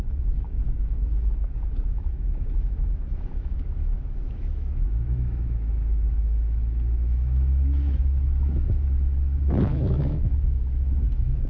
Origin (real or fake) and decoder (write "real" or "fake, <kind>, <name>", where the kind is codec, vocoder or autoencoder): fake, autoencoder, DAC-VAE